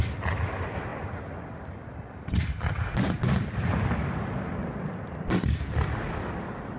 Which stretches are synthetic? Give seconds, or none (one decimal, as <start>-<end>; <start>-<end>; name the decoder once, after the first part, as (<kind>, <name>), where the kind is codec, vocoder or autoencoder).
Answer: none